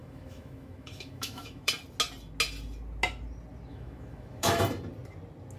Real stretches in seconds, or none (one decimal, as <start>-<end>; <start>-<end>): 1.7-3.7; 4.6-5.6

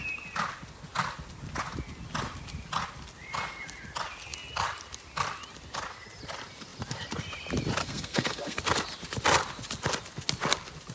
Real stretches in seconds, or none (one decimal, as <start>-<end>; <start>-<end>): 0.0-7.8; 8.6-10.9

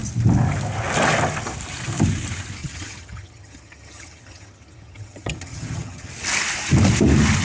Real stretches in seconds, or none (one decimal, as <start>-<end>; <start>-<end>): 0.0-2.6; 6.1-7.4

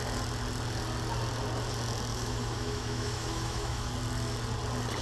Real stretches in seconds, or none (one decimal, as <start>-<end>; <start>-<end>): 0.0-2.1; 3.9-5.0